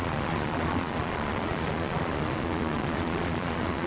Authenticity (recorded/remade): remade